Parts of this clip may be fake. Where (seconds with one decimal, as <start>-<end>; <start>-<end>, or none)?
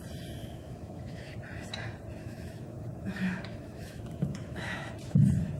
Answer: 0.4-1.3; 2.2-4.9